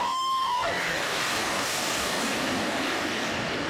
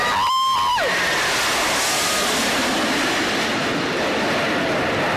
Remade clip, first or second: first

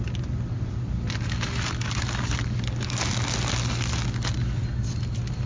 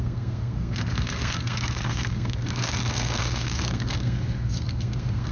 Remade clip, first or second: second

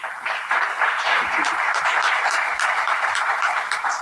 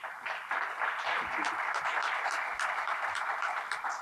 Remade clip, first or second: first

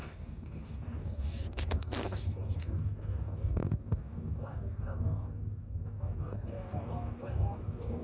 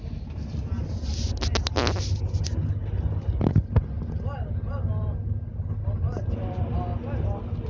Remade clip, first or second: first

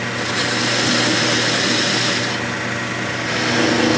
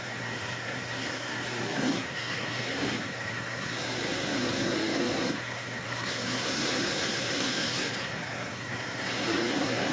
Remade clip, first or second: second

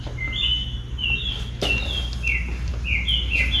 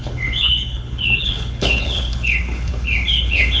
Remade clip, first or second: second